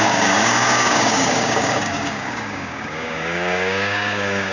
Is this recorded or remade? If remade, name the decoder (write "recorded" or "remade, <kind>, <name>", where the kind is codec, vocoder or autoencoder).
remade, codec, DAC